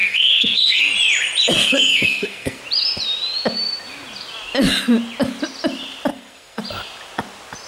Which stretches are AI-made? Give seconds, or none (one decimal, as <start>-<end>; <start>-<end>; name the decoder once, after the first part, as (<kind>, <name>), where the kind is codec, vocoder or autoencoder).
0.0-0.8 (codec, SNAC); 1.6-2.6; 6.1-6.6